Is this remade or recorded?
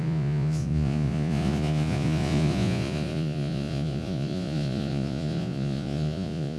remade